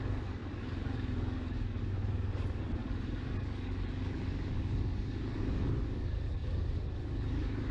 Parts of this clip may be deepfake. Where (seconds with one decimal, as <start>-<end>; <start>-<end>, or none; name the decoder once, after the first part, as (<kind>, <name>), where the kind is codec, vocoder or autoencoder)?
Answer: 0.0-2.8 (codec, DAC); 3.4-7.7